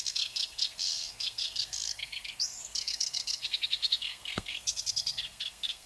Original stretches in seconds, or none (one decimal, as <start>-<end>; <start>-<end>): none